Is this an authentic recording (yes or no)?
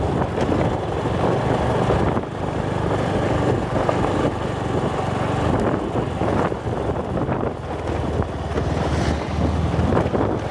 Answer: yes